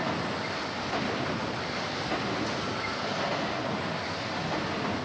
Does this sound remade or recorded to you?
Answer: recorded